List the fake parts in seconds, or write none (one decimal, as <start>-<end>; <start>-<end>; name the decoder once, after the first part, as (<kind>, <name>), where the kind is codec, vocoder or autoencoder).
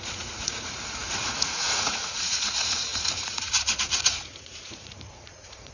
0.0-5.7 (vocoder, Vocos)